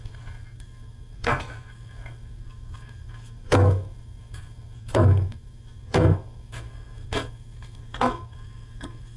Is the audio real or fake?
fake